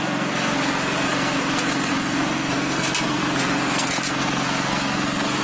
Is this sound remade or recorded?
remade